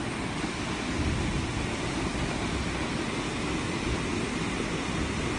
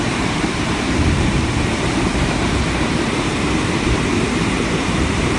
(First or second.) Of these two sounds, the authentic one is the first